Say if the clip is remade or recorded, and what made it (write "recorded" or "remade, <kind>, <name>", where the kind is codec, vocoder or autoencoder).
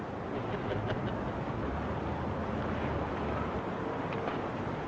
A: remade, vocoder, BigVGAN v2